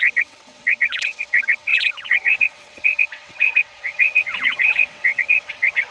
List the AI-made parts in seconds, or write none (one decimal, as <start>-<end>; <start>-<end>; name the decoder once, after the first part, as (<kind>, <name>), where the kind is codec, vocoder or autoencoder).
0.0-5.9 (vocoder, WaveNeXt)